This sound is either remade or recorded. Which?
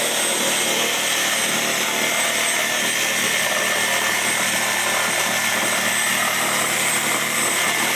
recorded